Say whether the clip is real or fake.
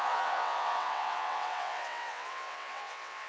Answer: fake